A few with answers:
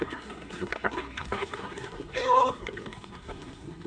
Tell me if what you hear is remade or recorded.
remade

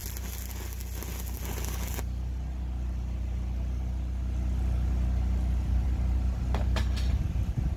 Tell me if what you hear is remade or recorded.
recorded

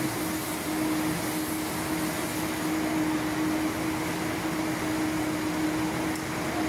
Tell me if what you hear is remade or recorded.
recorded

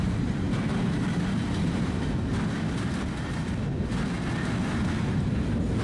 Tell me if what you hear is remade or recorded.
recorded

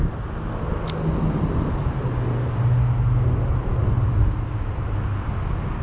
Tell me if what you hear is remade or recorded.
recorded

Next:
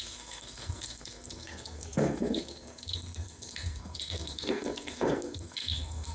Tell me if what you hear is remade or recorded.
remade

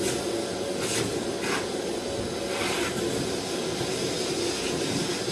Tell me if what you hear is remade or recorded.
recorded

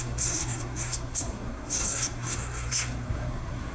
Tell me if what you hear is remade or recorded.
remade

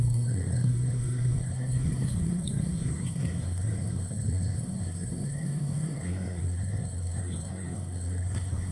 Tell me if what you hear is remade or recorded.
remade